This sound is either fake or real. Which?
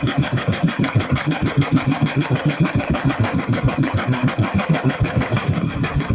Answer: fake